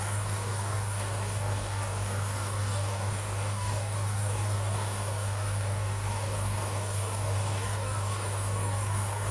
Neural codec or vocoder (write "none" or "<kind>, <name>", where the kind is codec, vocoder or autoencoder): codec, DAC